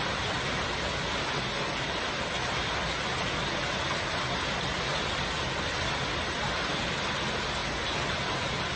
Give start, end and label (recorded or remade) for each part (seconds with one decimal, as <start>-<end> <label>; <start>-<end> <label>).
0.0-8.8 recorded